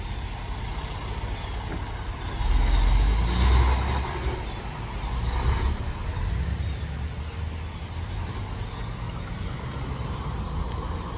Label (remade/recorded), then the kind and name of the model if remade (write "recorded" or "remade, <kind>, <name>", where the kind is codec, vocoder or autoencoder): recorded